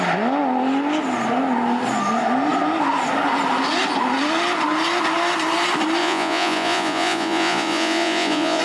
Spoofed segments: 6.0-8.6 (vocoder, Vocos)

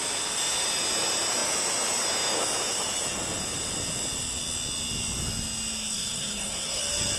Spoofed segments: 5.9-6.8 (codec, SNAC)

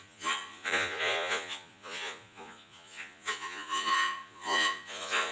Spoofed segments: 0.0-5.3 (vocoder, Vocos)

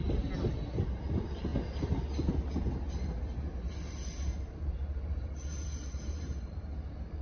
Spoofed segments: 0.0-1.5 (vocoder, BigVGAN v2); 4.5-7.2

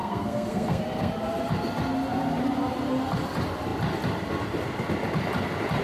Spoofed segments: 0.0-1.1 (codec, SNAC)

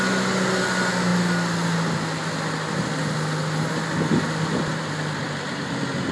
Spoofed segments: none

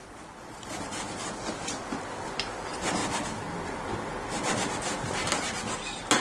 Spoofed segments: 0.0-1.6 (vocoder, BigVGAN v2)